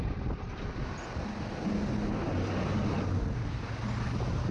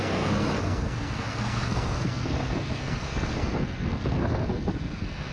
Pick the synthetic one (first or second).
second